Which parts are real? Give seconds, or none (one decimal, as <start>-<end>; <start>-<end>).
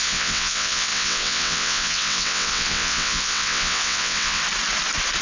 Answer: 4.4-5.2